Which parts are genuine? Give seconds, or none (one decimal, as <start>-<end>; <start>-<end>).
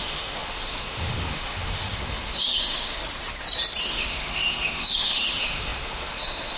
3.0-3.8